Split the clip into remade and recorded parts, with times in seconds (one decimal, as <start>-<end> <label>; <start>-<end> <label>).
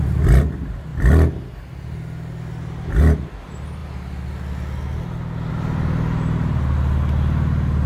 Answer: 0.0-7.9 recorded